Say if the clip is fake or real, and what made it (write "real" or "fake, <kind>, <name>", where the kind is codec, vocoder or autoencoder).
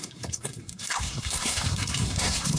fake, codec, SNAC